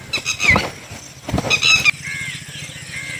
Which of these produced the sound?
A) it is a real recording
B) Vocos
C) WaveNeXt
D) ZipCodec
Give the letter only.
A